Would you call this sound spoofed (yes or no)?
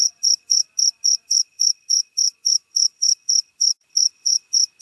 yes